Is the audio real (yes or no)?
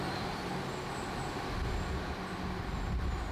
yes